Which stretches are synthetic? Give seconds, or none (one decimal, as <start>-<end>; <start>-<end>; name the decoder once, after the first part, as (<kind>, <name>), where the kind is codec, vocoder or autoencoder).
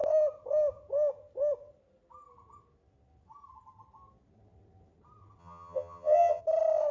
5.4-6.4 (vocoder, HiFi-GAN)